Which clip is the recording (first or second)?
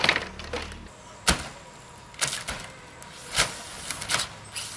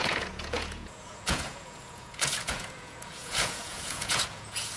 first